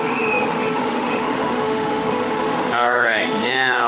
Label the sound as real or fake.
fake